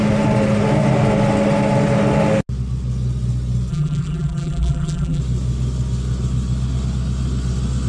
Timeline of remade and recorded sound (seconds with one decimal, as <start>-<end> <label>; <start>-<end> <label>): 0.0-3.7 recorded; 3.7-5.2 remade; 5.2-7.9 recorded